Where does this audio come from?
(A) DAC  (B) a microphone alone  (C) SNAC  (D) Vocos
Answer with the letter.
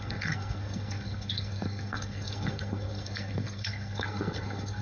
C